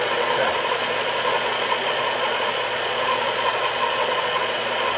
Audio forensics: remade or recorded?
remade